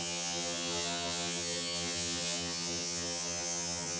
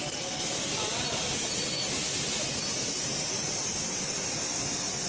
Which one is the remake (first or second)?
first